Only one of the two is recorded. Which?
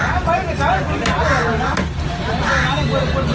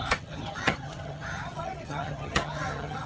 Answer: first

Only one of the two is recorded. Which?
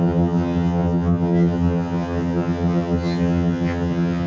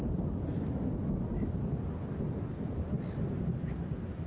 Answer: second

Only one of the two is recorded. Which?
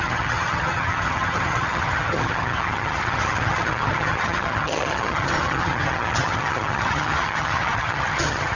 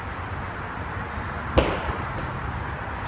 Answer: second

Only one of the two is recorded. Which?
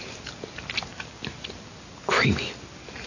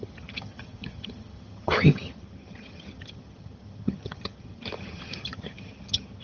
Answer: first